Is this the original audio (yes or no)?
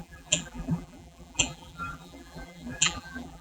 no